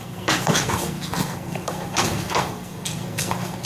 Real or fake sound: fake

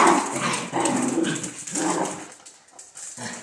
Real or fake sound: real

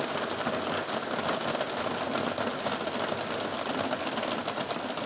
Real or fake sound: real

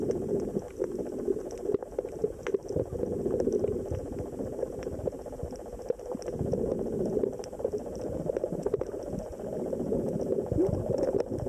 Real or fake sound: real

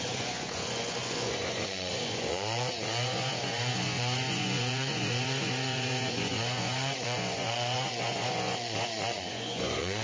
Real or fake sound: fake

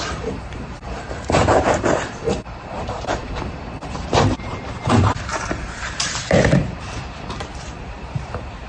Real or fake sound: fake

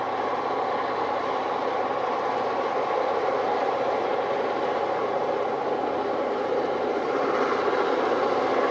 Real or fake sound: real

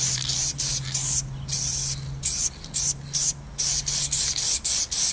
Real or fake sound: real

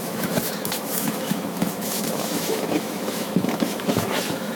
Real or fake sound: fake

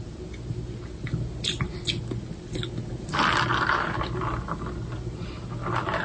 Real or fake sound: real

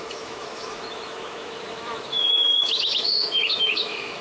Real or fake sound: fake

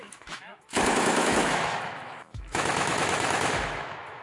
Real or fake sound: fake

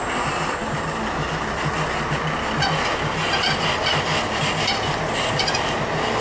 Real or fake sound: real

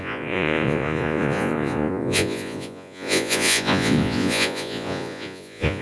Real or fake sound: fake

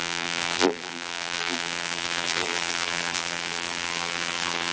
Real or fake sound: fake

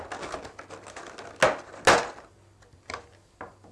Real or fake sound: real